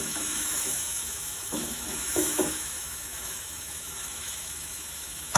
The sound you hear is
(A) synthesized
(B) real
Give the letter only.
A